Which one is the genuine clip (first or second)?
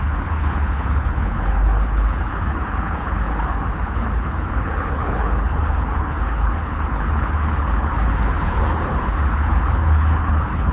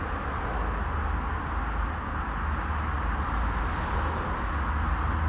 second